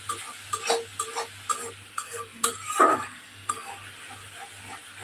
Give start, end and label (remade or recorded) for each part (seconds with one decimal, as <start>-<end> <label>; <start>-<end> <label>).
0.0-1.9 recorded; 1.9-2.5 remade; 2.5-2.9 recorded; 2.9-3.7 remade; 3.7-5.0 recorded